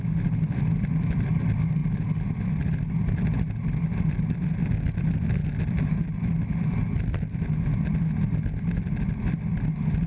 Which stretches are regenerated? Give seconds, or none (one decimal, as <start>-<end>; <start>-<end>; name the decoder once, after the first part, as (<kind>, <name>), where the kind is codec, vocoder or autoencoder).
none